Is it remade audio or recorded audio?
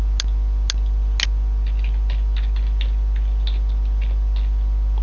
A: recorded